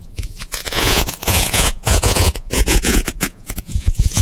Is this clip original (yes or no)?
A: no